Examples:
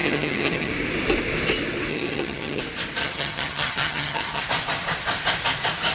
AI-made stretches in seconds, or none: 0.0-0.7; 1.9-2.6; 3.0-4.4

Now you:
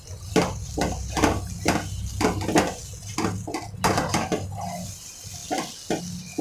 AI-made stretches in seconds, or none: none

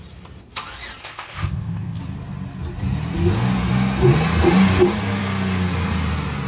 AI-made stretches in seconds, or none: 1.0-2.0

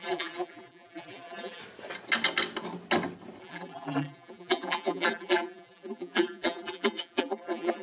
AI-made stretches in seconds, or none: 0.0-1.6; 3.4-7.8

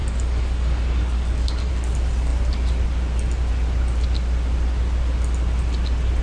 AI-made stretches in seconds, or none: 0.0-1.7

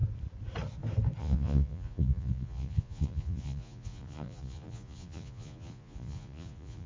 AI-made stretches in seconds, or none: 1.2-6.9

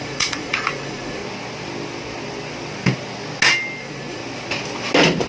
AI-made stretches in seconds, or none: 0.0-1.2; 3.8-4.2

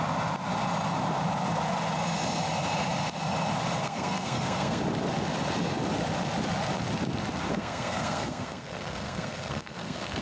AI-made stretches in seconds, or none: 3.8-4.8; 7.5-10.2